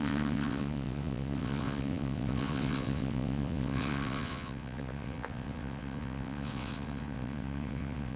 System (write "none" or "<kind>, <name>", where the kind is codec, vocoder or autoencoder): vocoder, WaveNeXt